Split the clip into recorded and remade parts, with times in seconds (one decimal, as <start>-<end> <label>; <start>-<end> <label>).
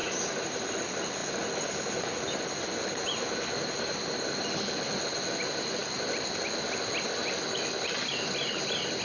0.0-0.6 remade; 0.6-9.0 recorded